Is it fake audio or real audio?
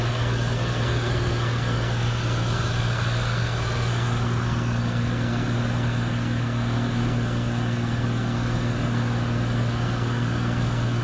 fake